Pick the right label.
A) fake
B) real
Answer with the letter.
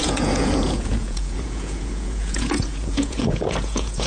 A